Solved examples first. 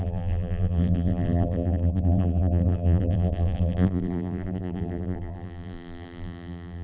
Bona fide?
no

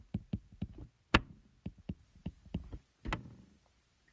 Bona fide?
yes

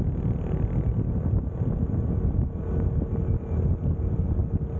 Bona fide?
yes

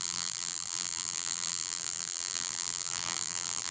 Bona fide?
no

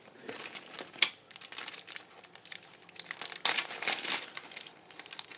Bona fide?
yes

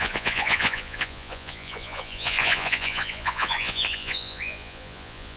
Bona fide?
no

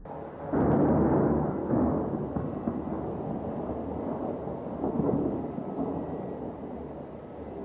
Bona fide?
yes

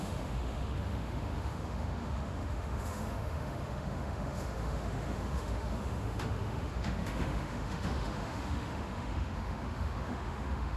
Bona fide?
no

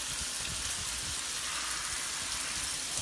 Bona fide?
yes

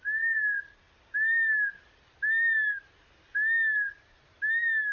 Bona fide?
yes